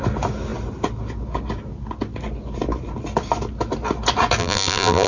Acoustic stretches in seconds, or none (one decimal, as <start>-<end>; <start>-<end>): 0.0-4.4